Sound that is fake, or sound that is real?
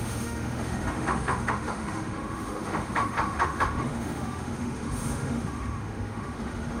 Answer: fake